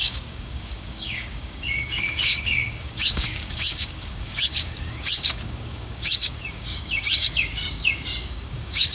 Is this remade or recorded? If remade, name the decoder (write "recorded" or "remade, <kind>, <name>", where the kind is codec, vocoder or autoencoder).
remade, codec, DAC